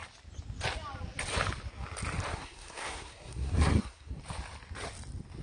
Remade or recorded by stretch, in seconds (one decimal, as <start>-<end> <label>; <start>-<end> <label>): 0.0-2.3 recorded; 2.3-4.2 remade; 4.2-5.4 recorded